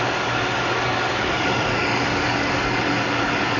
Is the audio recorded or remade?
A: remade